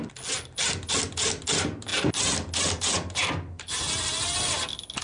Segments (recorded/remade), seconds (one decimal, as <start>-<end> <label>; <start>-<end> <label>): 0.0-5.0 recorded